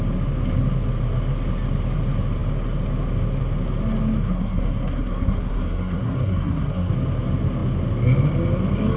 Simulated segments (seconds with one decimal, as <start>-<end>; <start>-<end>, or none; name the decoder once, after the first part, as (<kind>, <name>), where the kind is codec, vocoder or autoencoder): 4.2-6.9 (codec, SNAC)

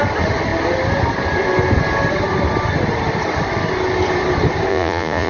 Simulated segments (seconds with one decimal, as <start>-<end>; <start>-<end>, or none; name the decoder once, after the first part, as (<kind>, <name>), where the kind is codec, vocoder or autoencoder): 4.7-5.3 (vocoder, Vocos)

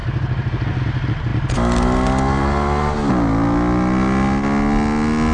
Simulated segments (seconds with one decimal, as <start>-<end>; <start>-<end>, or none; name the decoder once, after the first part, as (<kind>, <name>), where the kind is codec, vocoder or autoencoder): none

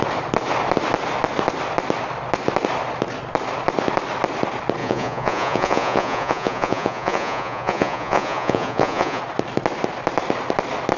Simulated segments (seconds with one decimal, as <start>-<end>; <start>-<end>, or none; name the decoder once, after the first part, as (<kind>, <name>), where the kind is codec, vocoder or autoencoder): 4.8-9.2 (vocoder, Vocos)

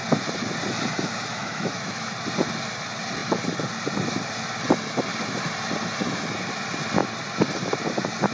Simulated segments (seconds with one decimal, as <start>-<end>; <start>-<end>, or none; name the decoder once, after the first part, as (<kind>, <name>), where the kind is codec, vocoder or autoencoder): 1.3-2.1 (autoencoder, DAC-VAE)

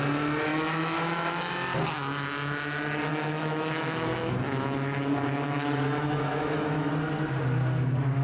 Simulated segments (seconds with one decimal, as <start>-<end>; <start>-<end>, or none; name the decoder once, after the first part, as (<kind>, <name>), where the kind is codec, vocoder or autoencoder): 0.5-1.5 (autoencoder, DAC-VAE); 3.1-6.9

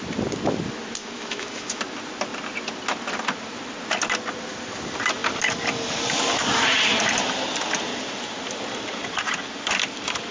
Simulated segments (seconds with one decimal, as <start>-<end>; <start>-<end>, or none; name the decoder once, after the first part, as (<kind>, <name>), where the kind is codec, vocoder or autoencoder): 1.0-1.8 (autoencoder, DAC-VAE)